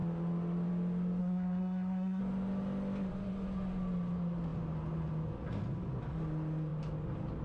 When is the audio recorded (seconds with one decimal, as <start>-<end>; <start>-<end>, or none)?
0.0-1.2; 2.2-7.4